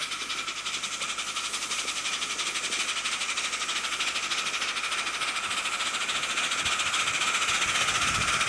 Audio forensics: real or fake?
real